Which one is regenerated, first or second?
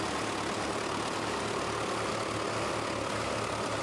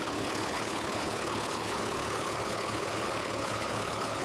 second